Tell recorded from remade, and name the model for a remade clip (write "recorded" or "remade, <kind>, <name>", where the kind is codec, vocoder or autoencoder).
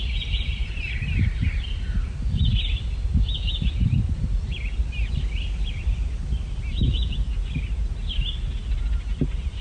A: recorded